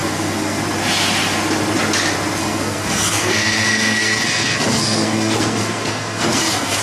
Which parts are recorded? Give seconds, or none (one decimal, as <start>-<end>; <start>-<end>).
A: 0.6-2.4